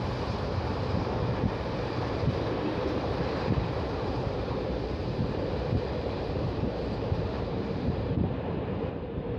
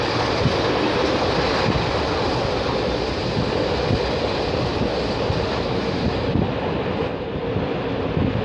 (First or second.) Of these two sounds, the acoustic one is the second